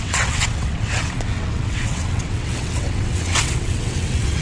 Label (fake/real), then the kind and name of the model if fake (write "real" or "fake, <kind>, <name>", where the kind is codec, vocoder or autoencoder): fake, vocoder, WaveNeXt